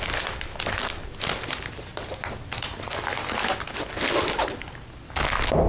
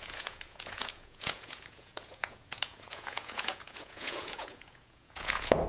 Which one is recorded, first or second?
first